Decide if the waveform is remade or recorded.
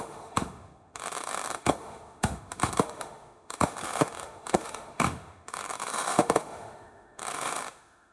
remade